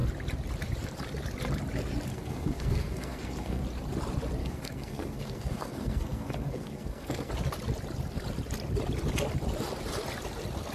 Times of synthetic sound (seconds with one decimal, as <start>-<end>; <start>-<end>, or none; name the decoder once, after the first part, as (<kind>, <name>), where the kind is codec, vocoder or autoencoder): 2.1-3.6 (codec, SNAC); 4.4-7.3